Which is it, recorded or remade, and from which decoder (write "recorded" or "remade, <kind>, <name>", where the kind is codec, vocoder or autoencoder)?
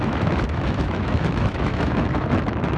remade, autoencoder, DAC-VAE